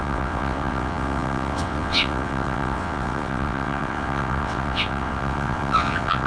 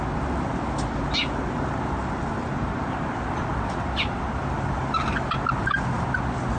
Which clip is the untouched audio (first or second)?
second